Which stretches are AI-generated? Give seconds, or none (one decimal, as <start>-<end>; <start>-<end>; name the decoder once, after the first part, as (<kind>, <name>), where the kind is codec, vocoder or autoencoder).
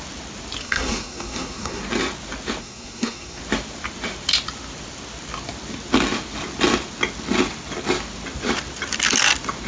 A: 0.6-1.8 (codec, SNAC); 2.6-3.4